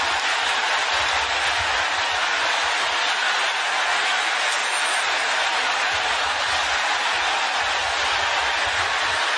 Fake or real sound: real